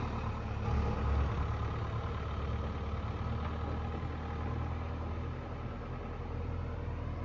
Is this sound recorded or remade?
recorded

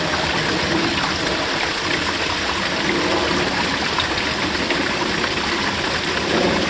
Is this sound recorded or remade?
recorded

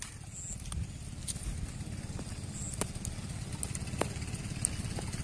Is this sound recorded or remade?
recorded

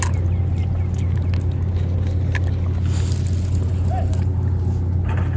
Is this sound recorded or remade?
recorded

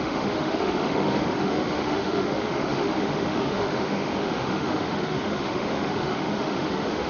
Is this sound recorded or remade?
remade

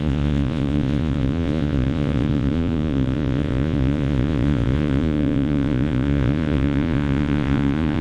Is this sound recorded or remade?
remade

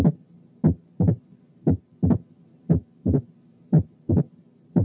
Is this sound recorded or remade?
remade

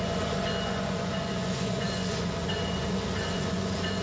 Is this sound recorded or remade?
remade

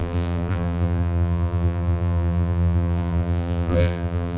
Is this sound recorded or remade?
remade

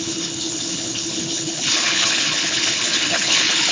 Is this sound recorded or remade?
remade